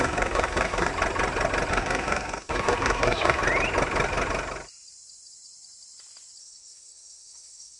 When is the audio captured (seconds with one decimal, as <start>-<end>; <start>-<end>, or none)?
0.9-1.7; 3.4-6.4